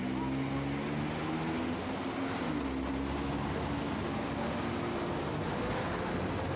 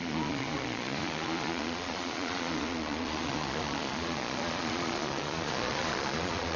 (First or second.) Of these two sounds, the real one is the first